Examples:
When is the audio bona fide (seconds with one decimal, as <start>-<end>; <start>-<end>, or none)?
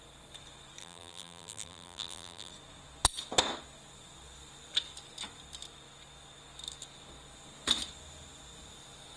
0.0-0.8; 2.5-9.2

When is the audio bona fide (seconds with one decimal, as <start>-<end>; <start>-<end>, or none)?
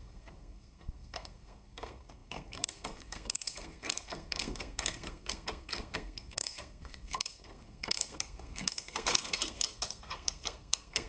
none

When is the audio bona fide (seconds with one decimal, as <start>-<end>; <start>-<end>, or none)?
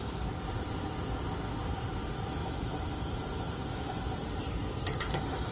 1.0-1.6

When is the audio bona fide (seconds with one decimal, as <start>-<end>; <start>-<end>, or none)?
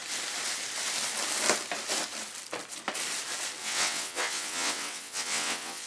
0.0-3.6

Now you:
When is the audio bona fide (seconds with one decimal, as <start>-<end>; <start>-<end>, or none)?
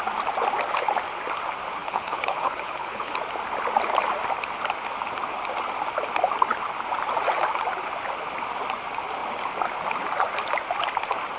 0.0-1.8; 3.1-11.4